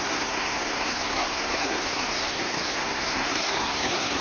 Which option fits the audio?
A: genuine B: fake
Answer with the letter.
B